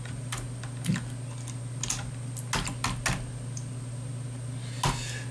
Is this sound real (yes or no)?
yes